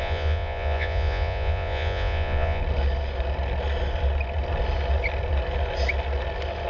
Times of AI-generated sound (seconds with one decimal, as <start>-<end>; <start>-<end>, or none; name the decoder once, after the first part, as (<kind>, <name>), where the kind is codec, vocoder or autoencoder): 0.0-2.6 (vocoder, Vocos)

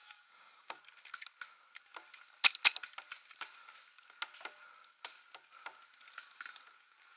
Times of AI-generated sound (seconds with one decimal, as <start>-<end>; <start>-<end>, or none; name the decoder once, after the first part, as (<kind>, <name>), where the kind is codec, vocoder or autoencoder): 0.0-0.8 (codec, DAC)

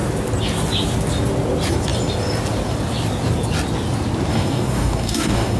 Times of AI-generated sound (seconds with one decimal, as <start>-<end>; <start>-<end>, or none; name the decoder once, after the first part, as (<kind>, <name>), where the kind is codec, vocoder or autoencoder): 4.3-5.6 (codec, DAC)

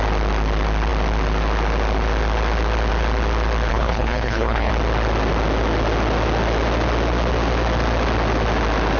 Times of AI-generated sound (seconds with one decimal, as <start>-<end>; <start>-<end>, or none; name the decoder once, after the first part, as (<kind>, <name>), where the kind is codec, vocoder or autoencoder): 3.7-4.7 (codec, HILCodec)

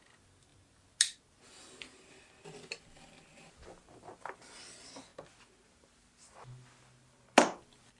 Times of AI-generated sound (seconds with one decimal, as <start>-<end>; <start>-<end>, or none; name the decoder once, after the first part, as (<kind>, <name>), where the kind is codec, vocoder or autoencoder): none